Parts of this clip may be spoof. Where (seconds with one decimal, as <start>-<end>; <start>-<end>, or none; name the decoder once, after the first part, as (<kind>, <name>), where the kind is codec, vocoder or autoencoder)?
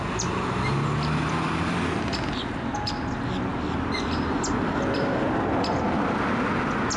none